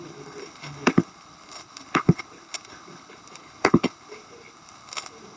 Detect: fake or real fake